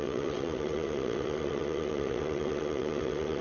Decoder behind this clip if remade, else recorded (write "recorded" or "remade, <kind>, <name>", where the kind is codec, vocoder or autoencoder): remade, vocoder, WaveNeXt